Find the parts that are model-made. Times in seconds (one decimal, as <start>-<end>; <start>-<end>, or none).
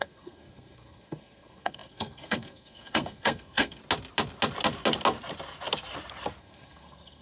0.0-3.8; 6.4-7.2